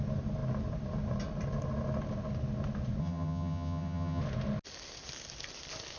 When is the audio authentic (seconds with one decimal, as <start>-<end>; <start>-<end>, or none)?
0.0-3.0; 4.2-6.0